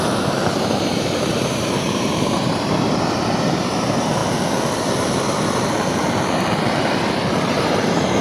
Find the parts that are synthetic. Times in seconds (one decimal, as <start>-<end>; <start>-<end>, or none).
0.0-4.2; 7.5-8.2